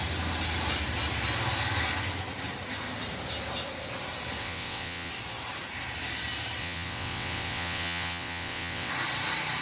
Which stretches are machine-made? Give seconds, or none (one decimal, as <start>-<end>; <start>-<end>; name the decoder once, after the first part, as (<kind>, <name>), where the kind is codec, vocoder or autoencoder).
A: 4.4-5.1 (vocoder, WaveNeXt); 6.6-8.9